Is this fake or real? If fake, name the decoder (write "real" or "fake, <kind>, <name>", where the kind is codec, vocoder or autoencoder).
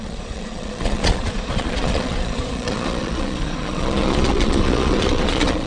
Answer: fake, vocoder, Vocos